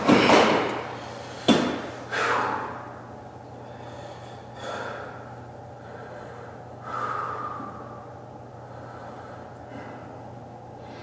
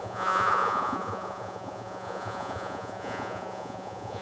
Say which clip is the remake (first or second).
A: second